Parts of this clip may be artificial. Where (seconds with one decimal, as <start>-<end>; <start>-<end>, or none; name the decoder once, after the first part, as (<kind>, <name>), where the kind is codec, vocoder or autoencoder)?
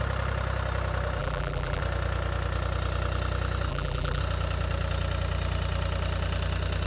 1.2-1.8 (vocoder, BigVGAN v2); 3.7-4.2